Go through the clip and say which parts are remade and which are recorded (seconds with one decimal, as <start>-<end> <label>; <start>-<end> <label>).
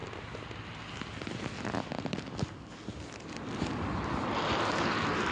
0.0-5.3 recorded